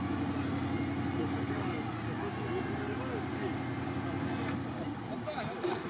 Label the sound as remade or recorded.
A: recorded